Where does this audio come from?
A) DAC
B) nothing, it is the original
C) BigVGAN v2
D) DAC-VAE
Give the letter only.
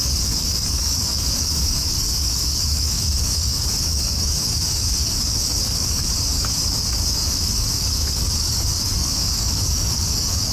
A